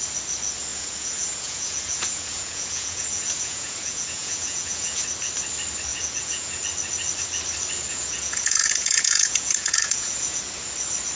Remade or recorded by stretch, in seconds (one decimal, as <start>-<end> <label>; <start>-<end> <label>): 0.0-0.7 recorded; 0.7-5.0 remade; 5.0-5.9 recorded; 5.9-6.6 remade; 6.6-7.9 recorded; 7.9-10.4 remade; 10.4-11.2 recorded